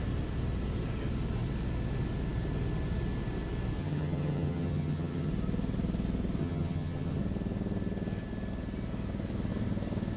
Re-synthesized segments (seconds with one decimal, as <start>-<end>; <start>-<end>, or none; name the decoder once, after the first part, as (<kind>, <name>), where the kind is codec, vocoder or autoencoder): 3.8-5.3 (vocoder, HiFi-GAN); 6.4-7.2